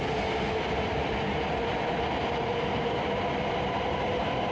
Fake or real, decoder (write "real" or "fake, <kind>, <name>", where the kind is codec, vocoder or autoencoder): real